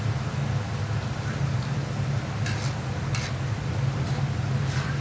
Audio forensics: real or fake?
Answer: real